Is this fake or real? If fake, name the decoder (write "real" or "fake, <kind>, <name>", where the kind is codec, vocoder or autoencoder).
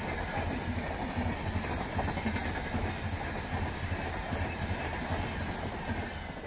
real